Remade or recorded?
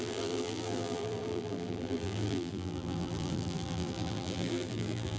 remade